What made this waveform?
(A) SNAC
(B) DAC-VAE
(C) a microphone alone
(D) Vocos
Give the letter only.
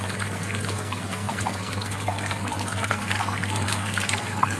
A